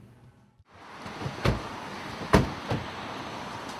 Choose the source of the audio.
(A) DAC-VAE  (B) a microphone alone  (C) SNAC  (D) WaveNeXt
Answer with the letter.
B